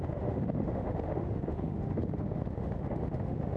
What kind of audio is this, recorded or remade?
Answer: remade